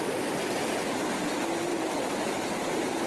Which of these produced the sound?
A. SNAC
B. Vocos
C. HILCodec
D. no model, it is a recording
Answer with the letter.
D